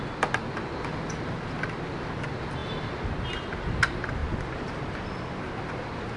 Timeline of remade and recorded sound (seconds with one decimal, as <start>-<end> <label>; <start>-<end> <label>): 0.0-6.2 recorded